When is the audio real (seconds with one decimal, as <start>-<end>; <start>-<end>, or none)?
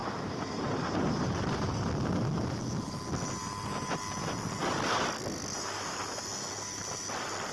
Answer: 2.6-7.5